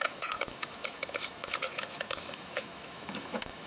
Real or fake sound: fake